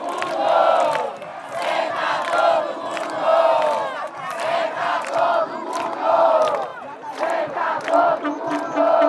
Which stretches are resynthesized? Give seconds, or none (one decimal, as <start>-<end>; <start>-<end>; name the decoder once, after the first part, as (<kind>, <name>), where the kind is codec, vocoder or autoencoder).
6.7-7.8 (vocoder, BigVGAN v2)

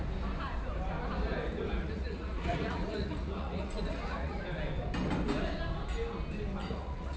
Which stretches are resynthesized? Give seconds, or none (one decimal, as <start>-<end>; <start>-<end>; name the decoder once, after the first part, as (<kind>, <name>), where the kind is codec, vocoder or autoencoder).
1.8-4.4 (vocoder, Vocos); 6.6-7.2

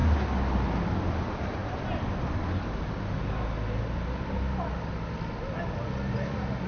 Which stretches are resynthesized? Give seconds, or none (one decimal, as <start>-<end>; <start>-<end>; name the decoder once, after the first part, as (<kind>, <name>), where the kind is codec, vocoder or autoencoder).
none

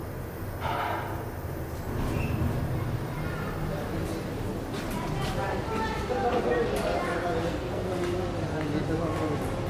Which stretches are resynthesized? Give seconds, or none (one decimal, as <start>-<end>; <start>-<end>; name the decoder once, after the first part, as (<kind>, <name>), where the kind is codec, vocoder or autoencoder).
7.4-7.9 (codec, SNAC)